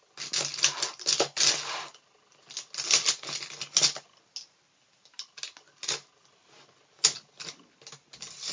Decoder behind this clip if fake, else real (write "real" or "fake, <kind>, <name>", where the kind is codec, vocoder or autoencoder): real